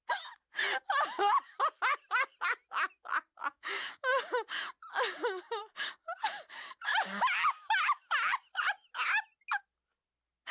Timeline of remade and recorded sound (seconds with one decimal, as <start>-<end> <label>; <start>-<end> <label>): 0.0-3.5 recorded; 3.5-4.1 remade; 4.1-7.5 recorded; 7.5-8.0 remade; 8.0-10.5 recorded